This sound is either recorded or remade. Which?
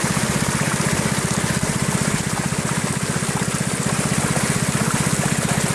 recorded